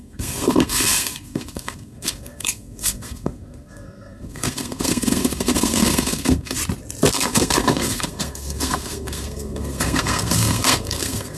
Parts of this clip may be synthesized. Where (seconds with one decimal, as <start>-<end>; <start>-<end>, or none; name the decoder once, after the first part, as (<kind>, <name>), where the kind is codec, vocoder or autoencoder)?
0.0-6.6 (codec, SNAC); 7.1-11.4